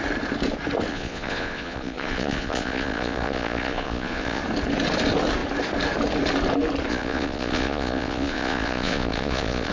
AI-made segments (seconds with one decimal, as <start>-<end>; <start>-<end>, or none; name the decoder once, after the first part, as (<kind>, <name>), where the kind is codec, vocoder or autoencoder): 0.9-4.4 (vocoder, Vocos); 6.9-9.7